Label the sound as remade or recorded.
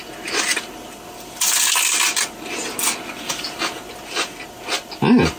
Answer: recorded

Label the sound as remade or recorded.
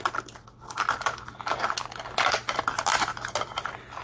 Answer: recorded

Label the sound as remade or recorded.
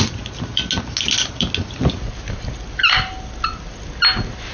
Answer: recorded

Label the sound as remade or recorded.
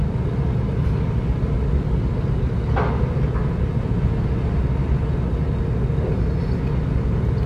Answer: recorded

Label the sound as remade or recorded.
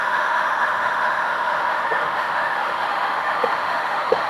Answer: remade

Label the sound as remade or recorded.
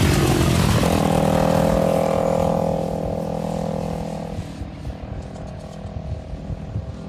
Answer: recorded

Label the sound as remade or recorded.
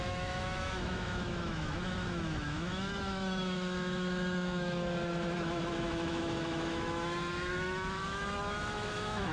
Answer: remade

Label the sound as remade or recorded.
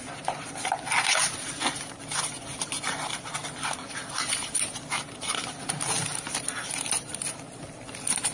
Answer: recorded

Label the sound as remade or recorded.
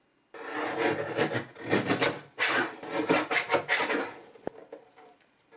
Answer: recorded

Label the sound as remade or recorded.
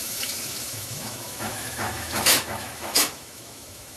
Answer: remade